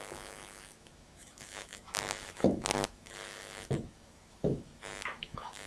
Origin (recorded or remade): remade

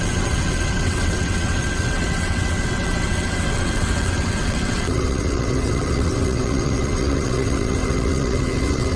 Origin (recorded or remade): remade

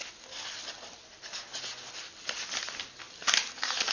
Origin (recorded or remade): recorded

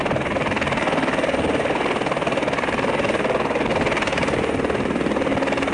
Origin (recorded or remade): recorded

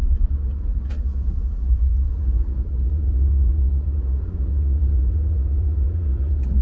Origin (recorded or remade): remade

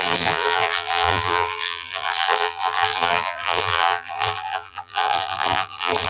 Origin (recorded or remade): remade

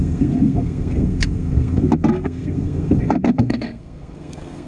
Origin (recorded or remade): remade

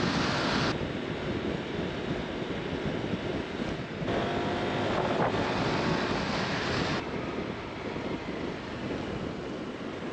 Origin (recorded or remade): recorded